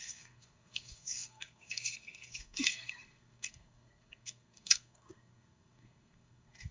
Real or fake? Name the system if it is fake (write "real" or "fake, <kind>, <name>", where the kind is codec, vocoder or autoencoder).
fake, codec, SNAC